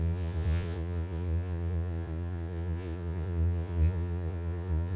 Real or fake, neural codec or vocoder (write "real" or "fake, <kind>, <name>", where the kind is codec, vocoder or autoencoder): fake, vocoder, Vocos